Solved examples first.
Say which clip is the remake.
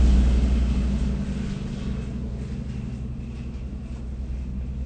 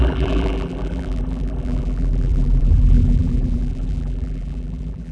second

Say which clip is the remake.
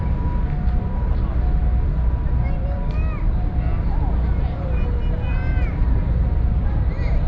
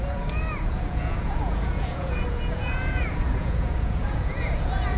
second